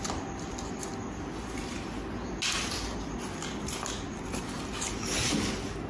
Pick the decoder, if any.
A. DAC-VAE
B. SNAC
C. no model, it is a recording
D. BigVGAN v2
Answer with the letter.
C